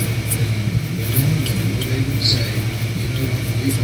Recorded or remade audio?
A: recorded